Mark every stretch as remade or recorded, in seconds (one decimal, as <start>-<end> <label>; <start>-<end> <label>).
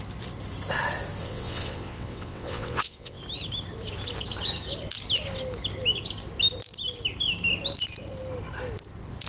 0.0-1.2 recorded; 1.2-3.2 remade; 3.2-9.3 recorded